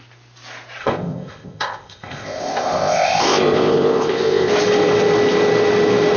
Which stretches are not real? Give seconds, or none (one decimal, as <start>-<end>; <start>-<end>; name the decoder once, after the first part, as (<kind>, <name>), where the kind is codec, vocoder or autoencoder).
0.8-4.5 (codec, ZipCodec)